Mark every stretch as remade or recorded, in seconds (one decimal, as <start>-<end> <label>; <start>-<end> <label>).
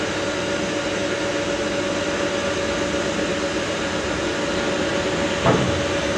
0.0-3.5 recorded; 3.5-4.4 remade; 4.4-6.2 recorded